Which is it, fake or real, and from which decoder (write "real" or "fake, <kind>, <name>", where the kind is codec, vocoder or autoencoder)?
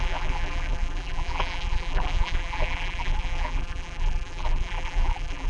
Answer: fake, vocoder, BigVGAN v2